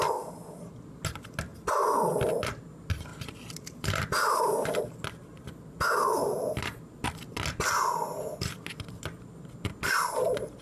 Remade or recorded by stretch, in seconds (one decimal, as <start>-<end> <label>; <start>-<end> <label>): 0.0-3.1 recorded; 3.1-4.8 remade; 4.8-10.6 recorded

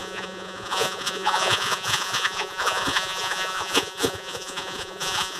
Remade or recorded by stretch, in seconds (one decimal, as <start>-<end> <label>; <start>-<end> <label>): 0.0-5.4 remade